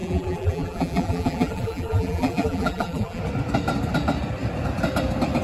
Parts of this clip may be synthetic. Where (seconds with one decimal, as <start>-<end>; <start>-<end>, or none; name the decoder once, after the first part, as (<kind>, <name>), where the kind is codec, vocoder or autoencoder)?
0.0-3.2 (vocoder, BigVGAN v2)